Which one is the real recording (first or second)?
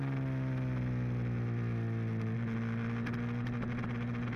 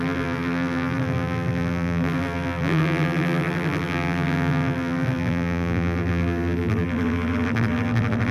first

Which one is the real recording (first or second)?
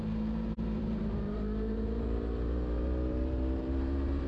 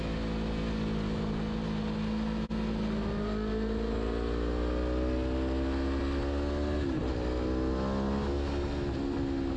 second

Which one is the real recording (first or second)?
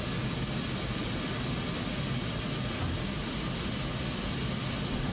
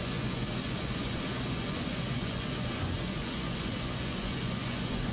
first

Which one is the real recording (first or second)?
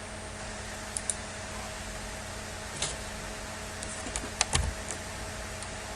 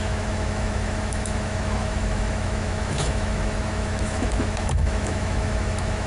first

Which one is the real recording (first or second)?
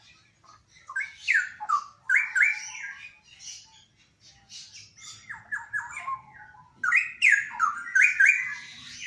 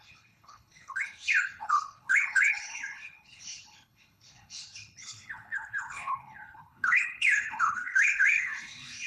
first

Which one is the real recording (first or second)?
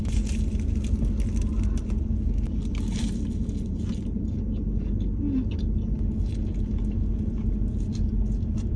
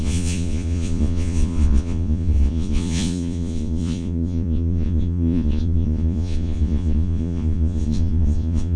first